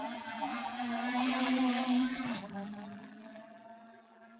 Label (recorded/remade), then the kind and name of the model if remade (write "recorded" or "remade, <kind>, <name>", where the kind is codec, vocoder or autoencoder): remade, vocoder, BigVGAN v2